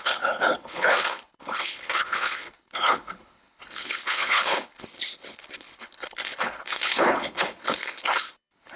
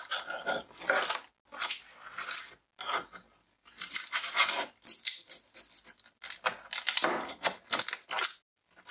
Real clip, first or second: second